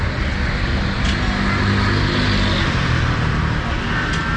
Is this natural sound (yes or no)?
yes